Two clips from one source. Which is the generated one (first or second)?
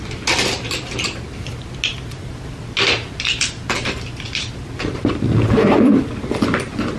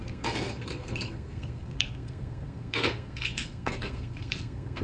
second